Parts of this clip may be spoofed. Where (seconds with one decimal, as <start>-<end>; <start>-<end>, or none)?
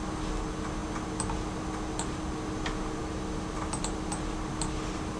none